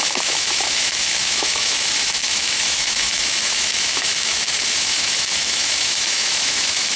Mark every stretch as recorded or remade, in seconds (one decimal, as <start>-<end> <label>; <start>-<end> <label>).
0.0-7.0 remade

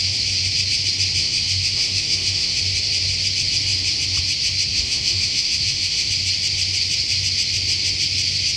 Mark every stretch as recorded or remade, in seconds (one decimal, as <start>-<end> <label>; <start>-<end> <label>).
0.0-1.2 recorded; 1.2-2.6 remade; 2.6-4.7 recorded; 4.7-6.1 remade; 6.1-8.6 recorded